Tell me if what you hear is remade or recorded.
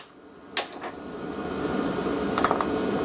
recorded